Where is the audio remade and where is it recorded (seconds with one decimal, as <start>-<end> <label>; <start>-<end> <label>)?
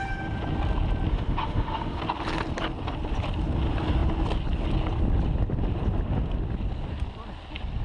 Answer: 0.0-1.1 recorded; 1.1-2.0 remade; 2.0-7.8 recorded